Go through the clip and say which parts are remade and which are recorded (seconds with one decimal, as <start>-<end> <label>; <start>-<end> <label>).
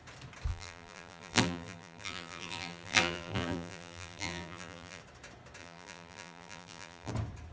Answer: 0.0-0.5 recorded; 0.5-5.0 remade; 5.0-5.6 recorded; 5.6-7.1 remade; 7.1-7.5 recorded